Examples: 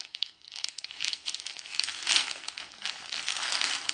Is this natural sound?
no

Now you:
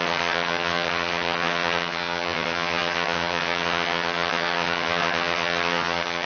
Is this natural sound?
no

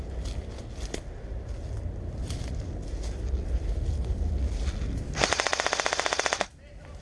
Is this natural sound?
yes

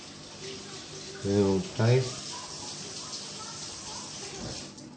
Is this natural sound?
yes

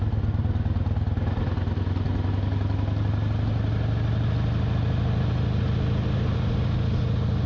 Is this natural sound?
yes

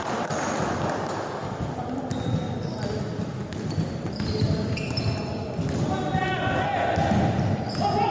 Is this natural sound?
yes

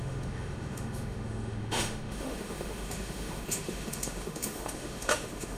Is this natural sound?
no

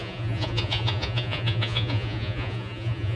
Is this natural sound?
no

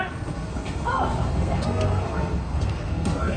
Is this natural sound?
no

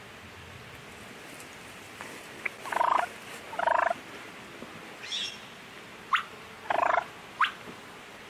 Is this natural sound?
yes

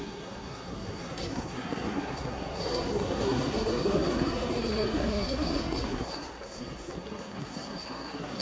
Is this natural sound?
no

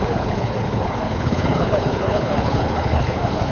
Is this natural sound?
no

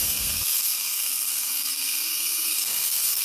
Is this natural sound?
no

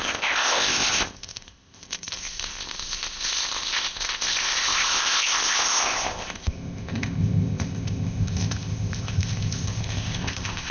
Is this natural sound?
no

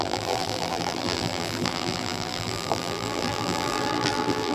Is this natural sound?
no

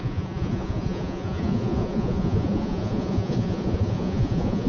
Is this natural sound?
no